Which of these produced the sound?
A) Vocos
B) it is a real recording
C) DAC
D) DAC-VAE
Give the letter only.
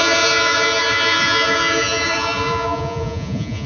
A